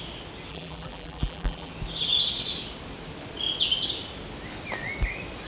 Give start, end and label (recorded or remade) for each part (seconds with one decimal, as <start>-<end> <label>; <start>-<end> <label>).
0.0-0.5 recorded; 0.5-1.7 remade; 1.7-5.5 recorded